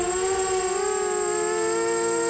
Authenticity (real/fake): real